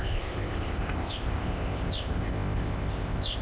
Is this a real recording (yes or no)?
no